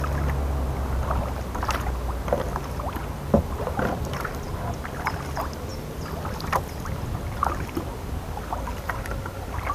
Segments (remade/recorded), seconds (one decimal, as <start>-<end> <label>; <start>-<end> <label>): 0.0-9.7 recorded